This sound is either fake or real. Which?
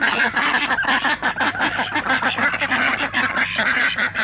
real